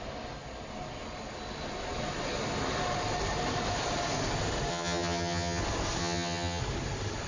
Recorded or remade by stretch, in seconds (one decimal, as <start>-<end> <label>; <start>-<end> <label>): 0.0-4.7 recorded; 4.7-5.6 remade; 5.6-6.0 recorded; 6.0-6.6 remade; 6.6-7.3 recorded